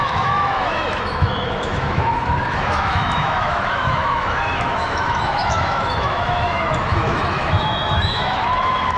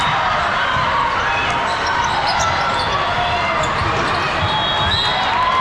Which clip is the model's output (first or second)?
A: first